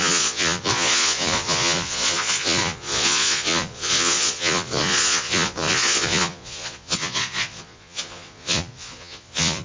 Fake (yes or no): yes